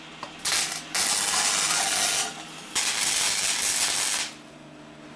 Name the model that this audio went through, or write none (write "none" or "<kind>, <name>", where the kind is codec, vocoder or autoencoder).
none